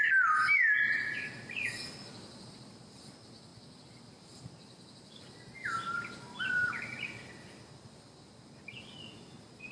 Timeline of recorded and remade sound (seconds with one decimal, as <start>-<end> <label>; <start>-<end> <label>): 0.0-9.7 recorded